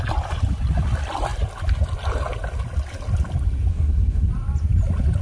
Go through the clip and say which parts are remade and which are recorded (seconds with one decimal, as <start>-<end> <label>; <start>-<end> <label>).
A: 0.0-3.7 recorded; 3.7-4.3 remade; 4.3-5.2 recorded